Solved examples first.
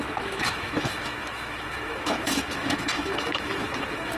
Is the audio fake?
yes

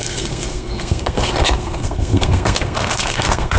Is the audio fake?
yes